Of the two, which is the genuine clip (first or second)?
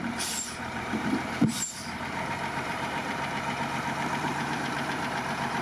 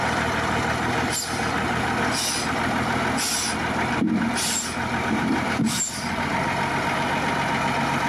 second